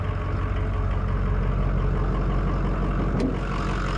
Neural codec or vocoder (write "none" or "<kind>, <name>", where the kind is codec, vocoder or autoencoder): none